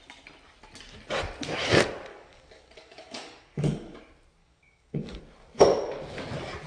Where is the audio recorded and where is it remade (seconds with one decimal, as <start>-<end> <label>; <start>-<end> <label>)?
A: 0.0-2.1 recorded; 2.1-4.0 remade; 4.0-4.4 recorded; 4.4-5.2 remade; 5.2-6.7 recorded

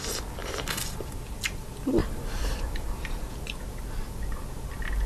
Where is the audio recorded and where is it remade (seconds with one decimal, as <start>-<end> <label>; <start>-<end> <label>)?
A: 0.0-0.4 recorded; 0.4-1.1 remade; 1.1-2.0 recorded; 2.0-3.2 remade; 3.2-5.1 recorded

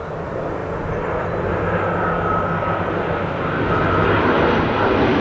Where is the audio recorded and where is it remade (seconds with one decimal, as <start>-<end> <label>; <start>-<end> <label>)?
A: 0.0-5.2 recorded

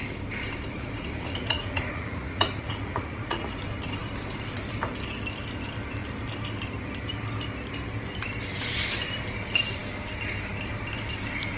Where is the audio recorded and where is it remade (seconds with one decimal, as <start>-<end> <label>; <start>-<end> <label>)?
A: 0.0-0.7 recorded; 0.7-3.6 remade; 3.6-11.6 recorded